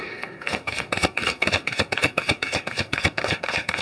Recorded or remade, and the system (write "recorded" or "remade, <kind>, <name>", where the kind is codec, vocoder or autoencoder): remade, codec, SNAC